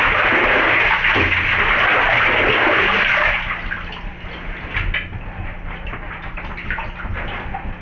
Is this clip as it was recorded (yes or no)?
yes